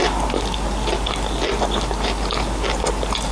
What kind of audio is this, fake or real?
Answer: real